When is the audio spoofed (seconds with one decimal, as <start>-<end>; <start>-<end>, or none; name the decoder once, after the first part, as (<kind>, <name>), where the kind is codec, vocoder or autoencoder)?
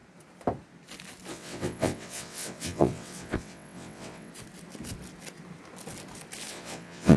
1.3-4.3 (vocoder, WaveNeXt); 6.5-7.2